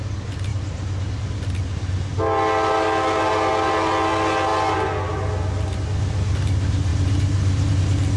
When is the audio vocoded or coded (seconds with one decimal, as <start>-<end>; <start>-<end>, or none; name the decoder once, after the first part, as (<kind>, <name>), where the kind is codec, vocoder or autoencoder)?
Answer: 6.9-7.7 (vocoder, BigVGAN v2)